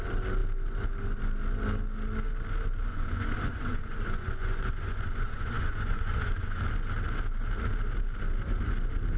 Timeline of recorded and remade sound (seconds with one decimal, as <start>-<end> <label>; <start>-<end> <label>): 0.0-2.9 recorded; 2.9-6.6 remade; 6.6-9.2 recorded